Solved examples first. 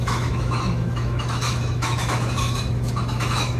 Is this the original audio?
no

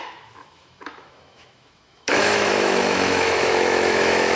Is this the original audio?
no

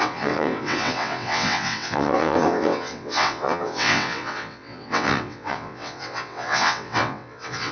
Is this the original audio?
no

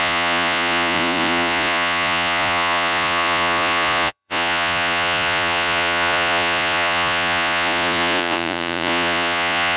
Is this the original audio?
no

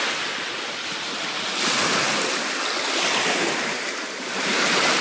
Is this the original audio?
yes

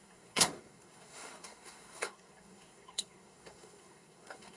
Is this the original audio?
no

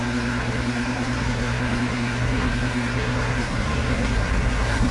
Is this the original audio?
no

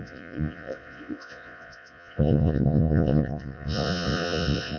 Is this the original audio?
no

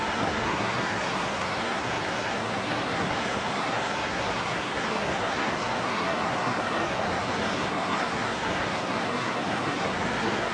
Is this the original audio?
no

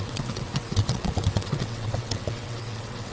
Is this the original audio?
no